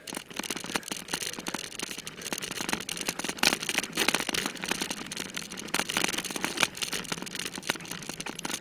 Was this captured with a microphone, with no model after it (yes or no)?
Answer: yes